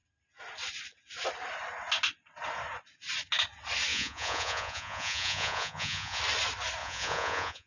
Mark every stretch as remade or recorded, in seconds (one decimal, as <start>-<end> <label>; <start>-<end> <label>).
0.0-3.9 recorded; 3.9-6.2 remade; 6.2-6.8 recorded; 6.8-7.7 remade